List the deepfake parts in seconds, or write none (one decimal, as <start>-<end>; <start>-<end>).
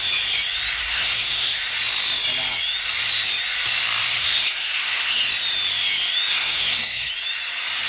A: 0.8-1.6; 4.0-5.2; 6.3-7.1